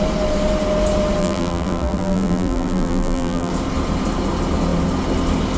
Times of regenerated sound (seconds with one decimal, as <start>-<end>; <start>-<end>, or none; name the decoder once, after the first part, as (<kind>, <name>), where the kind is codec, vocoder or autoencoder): 1.2-3.5 (vocoder, BigVGAN v2)